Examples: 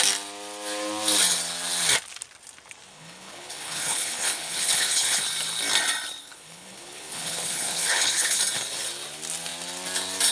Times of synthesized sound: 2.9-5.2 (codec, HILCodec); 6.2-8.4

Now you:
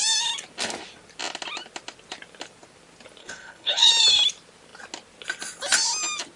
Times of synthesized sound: 3.2-3.9 (codec, HILCodec)

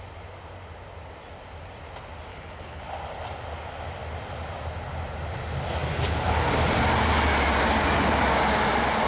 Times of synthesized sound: 2.3-2.8 (codec, HILCodec)